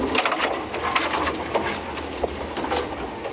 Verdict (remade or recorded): recorded